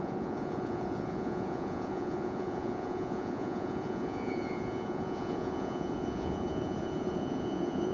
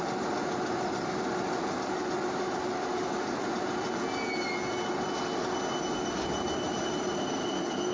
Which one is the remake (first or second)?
first